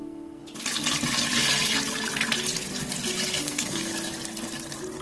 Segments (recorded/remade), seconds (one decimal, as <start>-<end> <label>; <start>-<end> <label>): 0.0-0.4 remade; 0.4-3.4 recorded; 3.4-3.9 remade; 3.9-5.0 recorded